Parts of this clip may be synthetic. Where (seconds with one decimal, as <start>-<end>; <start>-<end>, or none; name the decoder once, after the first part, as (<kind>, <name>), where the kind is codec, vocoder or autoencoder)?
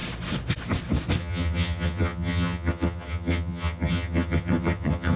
1.2-5.2 (vocoder, HiFi-GAN)